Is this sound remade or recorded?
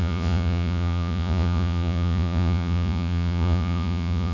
remade